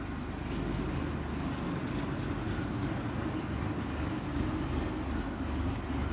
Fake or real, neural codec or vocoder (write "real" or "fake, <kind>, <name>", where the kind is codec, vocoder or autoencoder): real